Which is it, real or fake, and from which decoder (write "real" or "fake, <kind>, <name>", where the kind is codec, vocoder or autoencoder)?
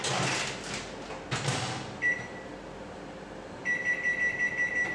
real